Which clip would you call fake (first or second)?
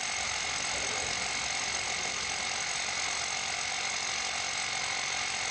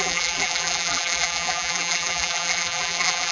second